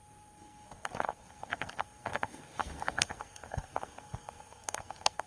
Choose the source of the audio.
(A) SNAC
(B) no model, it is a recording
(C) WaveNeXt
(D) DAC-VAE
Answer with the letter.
A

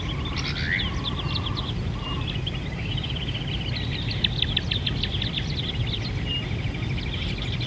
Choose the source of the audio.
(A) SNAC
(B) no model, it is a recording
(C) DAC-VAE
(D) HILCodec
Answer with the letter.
B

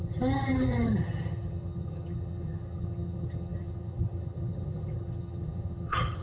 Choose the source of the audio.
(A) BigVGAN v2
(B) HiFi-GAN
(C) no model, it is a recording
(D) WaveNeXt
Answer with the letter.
B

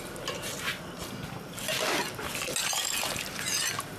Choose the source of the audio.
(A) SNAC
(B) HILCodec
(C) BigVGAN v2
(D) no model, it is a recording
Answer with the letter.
D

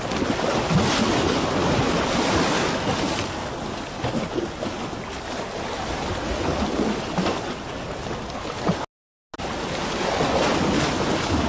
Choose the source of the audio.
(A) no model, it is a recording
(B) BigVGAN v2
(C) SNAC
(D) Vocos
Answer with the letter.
A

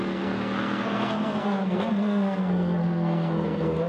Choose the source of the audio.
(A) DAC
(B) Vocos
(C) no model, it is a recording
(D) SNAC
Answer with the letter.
D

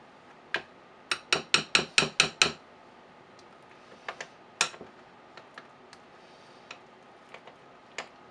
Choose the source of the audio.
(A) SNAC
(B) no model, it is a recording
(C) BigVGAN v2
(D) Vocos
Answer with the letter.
B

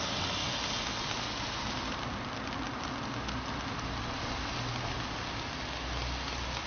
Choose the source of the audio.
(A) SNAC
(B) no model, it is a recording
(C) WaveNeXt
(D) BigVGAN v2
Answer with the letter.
B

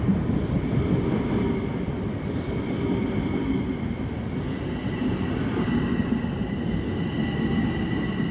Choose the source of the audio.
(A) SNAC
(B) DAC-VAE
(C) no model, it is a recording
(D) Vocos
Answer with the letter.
C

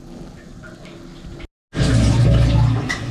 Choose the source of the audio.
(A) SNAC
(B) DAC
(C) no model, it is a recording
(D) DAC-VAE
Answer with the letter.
C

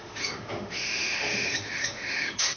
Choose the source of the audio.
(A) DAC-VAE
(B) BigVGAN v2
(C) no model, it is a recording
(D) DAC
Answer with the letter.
A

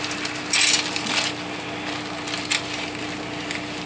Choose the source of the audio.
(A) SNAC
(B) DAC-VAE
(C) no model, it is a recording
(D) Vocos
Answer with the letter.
C